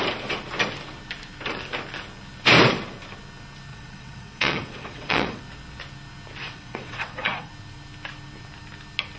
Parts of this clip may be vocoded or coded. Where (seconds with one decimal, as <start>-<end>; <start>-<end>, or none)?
3.7-5.4; 6.4-7.5